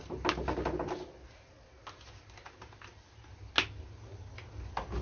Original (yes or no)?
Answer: yes